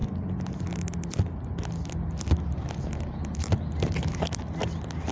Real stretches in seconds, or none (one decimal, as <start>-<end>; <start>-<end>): 0.0-5.1